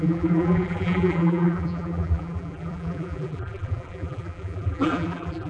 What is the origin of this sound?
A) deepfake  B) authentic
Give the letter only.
A